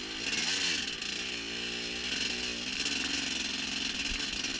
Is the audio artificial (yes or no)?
no